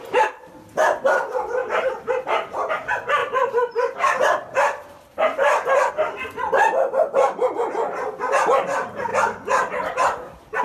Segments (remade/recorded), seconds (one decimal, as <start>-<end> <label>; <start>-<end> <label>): 0.0-1.6 recorded; 1.6-2.7 remade; 2.7-3.2 recorded; 3.2-5.9 remade; 5.9-10.6 recorded